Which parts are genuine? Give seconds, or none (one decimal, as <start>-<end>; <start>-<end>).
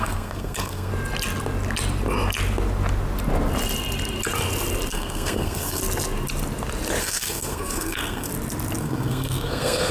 0.9-4.9; 5.8-7.0; 8.3-8.8